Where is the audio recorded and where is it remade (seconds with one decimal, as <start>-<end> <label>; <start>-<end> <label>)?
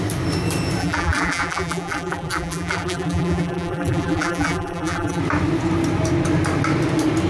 0.0-0.8 recorded; 0.8-5.2 remade; 5.2-7.3 recorded